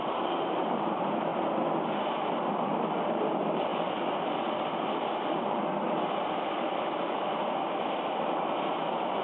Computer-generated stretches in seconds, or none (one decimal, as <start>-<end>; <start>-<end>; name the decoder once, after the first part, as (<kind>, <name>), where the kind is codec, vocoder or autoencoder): 0.0-1.3 (vocoder, BigVGAN v2); 3.1-3.7; 4.7-7.4; 8.7-9.2